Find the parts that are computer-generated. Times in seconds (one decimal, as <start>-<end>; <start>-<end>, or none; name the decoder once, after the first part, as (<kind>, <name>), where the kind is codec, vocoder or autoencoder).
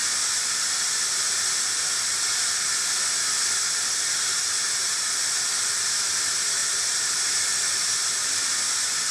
none